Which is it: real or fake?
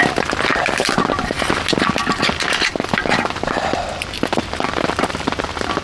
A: fake